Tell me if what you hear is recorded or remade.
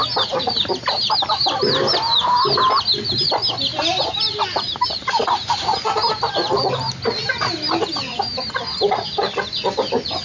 recorded